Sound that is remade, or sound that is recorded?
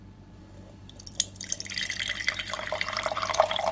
remade